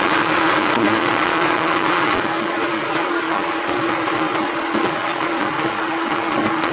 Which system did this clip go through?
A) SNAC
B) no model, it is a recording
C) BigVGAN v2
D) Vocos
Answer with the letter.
D